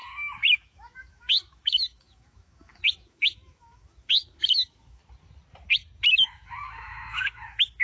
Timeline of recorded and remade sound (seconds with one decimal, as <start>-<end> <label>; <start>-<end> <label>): 0.0-5.0 remade; 5.0-6.1 recorded; 6.1-7.8 remade